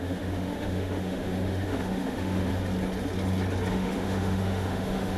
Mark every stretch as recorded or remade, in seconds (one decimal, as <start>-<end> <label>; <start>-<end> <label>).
0.0-2.5 remade; 2.5-3.7 recorded; 3.7-5.2 remade

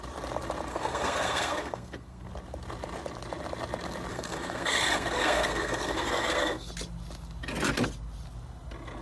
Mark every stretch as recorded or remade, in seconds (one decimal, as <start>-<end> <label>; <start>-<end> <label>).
0.0-0.7 recorded; 0.7-2.3 remade; 2.3-4.1 recorded; 4.1-6.7 remade; 6.7-9.0 recorded

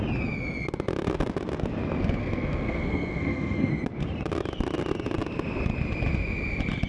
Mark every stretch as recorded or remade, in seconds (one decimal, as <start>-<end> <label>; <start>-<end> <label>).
0.0-2.2 recorded; 2.2-3.7 remade; 3.7-6.9 recorded